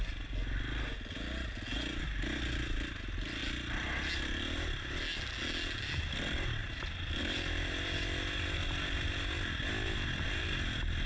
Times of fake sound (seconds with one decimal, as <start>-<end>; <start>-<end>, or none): 6.6-7.2; 8.6-9.7